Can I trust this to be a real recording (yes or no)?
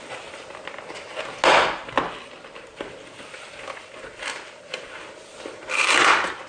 yes